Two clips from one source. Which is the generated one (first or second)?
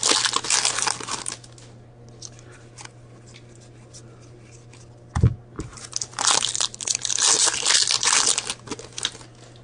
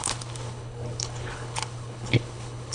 second